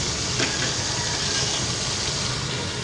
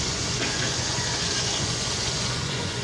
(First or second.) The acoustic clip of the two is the first